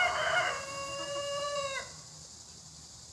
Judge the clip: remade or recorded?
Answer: recorded